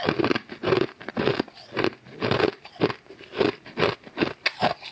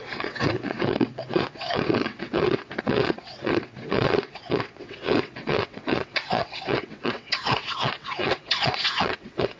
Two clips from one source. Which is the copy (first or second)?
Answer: second